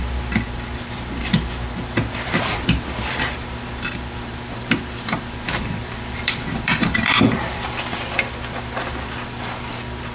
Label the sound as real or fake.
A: fake